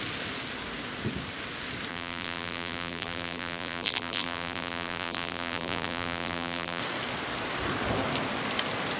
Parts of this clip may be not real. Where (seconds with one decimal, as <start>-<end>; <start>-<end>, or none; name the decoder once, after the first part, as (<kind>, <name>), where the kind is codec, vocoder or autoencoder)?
1.9-6.8 (vocoder, BigVGAN v2)